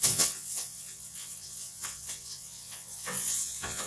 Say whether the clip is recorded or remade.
remade